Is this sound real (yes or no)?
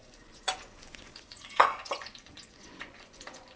no